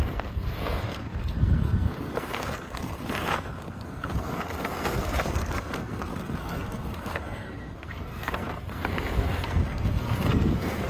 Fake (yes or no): yes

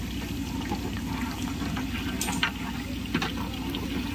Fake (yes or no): no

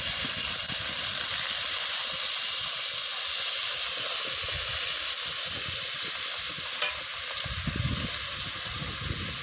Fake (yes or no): no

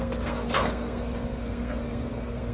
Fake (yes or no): yes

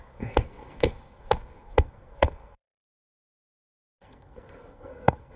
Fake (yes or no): yes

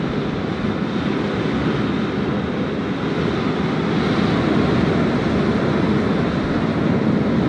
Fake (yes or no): no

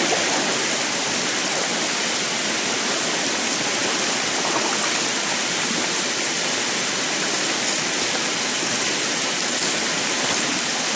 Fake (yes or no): no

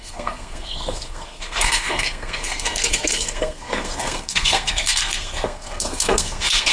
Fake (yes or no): yes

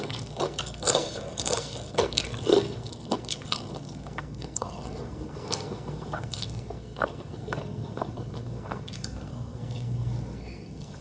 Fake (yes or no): yes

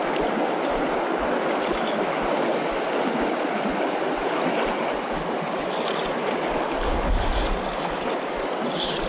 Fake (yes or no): no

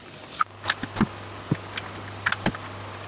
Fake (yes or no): no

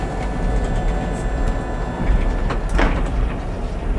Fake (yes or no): no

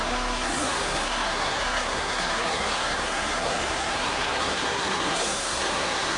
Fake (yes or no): yes